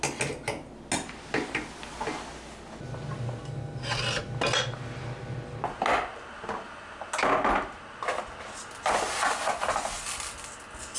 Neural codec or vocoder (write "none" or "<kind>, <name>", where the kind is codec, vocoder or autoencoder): none